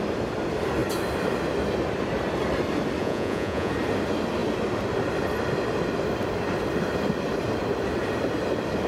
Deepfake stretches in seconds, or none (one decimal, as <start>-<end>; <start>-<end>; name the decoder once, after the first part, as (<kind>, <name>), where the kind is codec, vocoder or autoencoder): 3.0-3.7 (vocoder, Vocos)